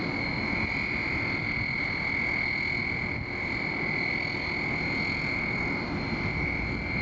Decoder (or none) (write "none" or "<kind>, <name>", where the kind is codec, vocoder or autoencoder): none